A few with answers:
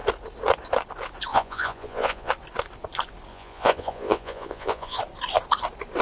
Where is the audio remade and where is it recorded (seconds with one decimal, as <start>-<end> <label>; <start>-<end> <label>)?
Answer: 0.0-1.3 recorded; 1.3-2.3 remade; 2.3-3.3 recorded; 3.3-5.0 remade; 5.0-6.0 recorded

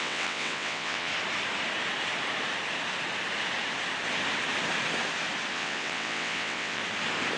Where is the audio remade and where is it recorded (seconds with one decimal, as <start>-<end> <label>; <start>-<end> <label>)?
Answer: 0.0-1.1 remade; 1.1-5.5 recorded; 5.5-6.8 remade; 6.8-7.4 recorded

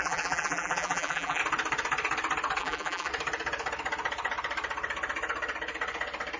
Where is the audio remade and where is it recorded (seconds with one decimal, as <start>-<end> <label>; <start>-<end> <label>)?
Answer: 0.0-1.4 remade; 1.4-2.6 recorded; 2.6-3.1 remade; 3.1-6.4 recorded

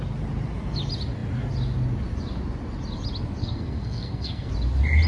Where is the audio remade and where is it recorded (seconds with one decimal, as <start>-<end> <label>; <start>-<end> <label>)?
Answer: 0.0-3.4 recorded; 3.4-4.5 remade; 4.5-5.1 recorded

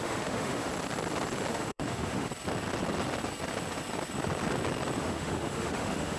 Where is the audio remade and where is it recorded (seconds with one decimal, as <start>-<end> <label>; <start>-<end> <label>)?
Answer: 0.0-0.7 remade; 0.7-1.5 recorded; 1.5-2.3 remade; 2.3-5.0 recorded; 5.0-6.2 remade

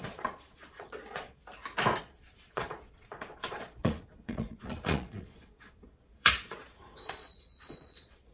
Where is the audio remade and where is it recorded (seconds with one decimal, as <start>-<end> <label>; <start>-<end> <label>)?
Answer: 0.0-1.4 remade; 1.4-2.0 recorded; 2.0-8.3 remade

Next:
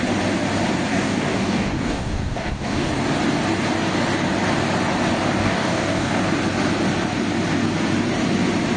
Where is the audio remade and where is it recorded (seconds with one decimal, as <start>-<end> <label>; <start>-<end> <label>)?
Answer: 0.0-0.9 recorded; 0.9-2.9 remade; 2.9-5.4 recorded; 5.4-6.2 remade; 6.2-8.8 recorded